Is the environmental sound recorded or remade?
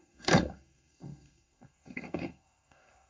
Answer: remade